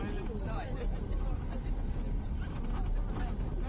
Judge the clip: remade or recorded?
recorded